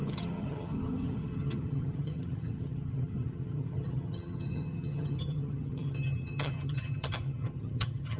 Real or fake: fake